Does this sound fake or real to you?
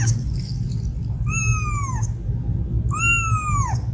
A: real